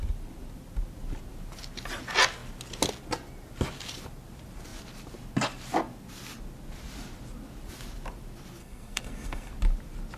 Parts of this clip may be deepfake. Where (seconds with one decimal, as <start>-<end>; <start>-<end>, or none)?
8.6-9.5